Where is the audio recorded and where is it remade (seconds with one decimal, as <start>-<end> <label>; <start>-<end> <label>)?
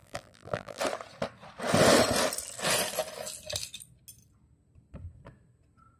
0.0-0.8 remade; 0.8-6.0 recorded